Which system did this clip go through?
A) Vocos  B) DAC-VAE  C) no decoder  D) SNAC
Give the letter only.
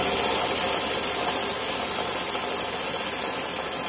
C